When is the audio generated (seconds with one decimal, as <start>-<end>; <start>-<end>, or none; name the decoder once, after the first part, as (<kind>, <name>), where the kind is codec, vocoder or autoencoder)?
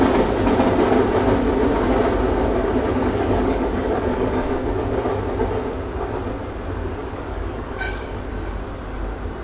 3.0-4.7 (codec, DAC); 7.0-8.3